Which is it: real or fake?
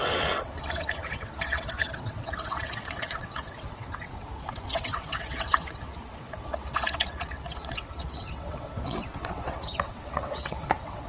fake